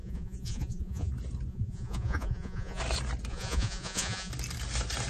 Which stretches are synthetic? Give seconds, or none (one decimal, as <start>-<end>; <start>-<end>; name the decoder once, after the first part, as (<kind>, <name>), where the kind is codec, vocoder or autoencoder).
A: 0.0-1.1 (vocoder, Vocos); 1.5-2.8; 3.3-4.3